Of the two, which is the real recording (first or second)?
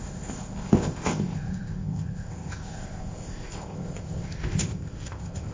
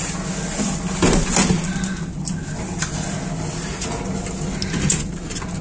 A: second